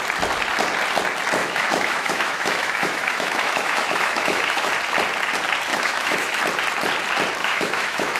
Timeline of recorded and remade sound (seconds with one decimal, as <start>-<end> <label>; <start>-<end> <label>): 0.0-1.4 recorded; 1.4-4.7 remade; 4.7-5.7 recorded; 5.7-6.4 remade; 6.4-7.4 recorded; 7.4-8.2 remade